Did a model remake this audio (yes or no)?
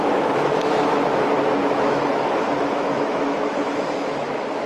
yes